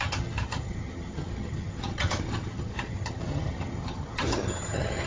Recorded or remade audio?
remade